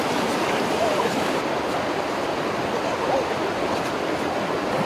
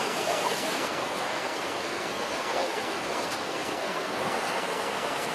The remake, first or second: second